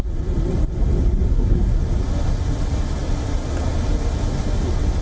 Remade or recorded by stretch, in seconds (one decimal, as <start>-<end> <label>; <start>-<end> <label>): 0.0-1.3 recorded; 1.3-1.8 remade; 1.8-5.0 recorded